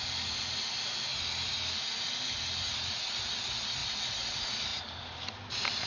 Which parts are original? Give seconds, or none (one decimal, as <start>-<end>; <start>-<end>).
0.0-5.9